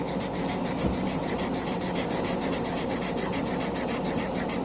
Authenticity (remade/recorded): recorded